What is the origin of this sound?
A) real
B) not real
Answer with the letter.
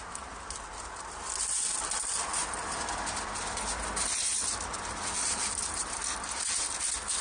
A